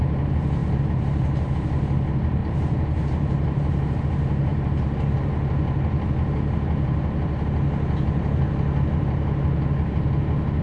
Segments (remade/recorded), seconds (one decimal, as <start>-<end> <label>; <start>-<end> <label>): 0.0-0.6 recorded; 0.6-1.5 remade; 1.5-2.4 recorded; 2.4-4.0 remade; 4.0-4.5 recorded; 4.5-5.3 remade; 5.3-10.6 recorded